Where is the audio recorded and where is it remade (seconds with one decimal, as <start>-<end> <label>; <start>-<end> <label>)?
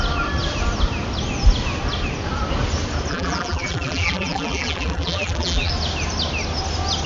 0.0-3.1 recorded; 3.1-5.7 remade; 5.7-7.1 recorded